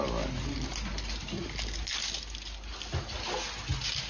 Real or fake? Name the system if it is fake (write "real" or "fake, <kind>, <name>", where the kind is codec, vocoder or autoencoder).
real